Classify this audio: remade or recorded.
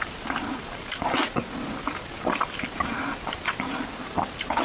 recorded